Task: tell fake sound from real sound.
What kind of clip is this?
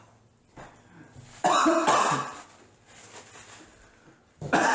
real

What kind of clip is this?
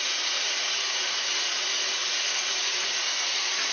fake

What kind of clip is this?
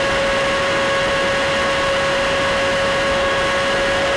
real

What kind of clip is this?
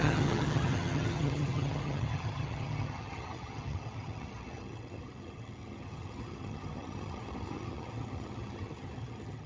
fake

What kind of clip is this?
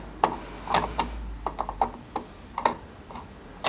real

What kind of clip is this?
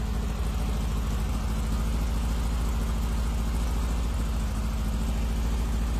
real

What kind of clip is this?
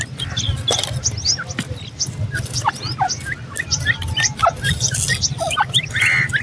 real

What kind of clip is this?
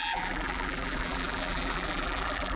fake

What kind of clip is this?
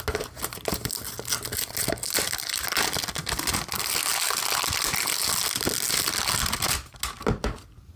real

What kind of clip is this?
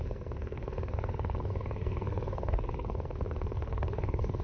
fake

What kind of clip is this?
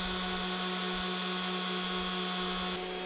real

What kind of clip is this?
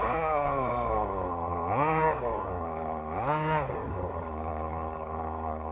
fake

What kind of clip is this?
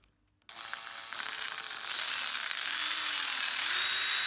real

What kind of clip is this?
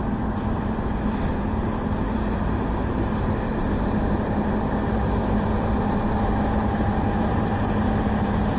fake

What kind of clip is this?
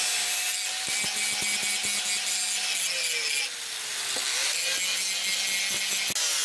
real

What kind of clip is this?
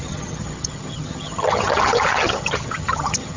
fake